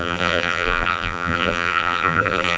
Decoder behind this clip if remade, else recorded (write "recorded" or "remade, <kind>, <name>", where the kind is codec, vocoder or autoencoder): remade, vocoder, BigVGAN v2